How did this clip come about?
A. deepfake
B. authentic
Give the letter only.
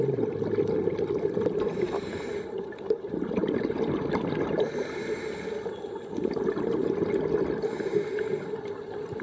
B